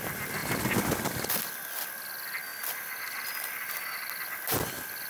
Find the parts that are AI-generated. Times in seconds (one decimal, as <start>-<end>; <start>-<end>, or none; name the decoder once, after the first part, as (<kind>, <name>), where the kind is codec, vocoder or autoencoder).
none